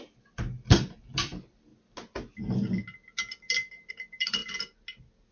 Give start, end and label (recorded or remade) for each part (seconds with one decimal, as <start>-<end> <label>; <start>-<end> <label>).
0.0-1.7 remade; 1.7-3.9 recorded; 3.9-4.4 remade; 4.4-5.3 recorded